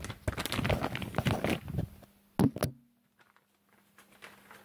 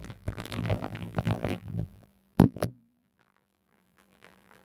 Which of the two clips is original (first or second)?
first